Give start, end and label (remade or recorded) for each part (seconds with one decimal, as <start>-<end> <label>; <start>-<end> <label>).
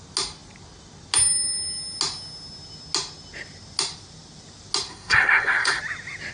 0.0-4.9 recorded; 4.9-5.8 remade; 5.8-6.3 recorded